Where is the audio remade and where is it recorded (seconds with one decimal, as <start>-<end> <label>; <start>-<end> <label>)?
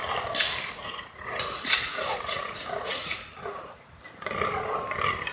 0.0-0.8 recorded; 0.8-4.0 remade; 4.0-5.3 recorded